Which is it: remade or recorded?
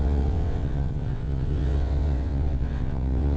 remade